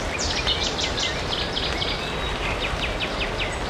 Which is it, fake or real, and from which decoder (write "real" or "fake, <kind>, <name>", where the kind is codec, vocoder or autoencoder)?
real